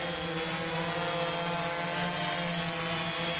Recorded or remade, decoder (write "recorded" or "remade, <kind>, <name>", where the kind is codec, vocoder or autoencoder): recorded